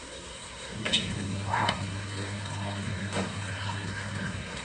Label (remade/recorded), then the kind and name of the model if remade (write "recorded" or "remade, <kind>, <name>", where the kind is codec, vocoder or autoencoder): remade, codec, SNAC